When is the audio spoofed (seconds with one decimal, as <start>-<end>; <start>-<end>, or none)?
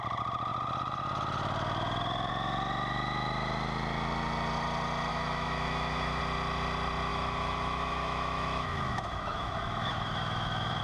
5.1-6.2; 7.1-10.8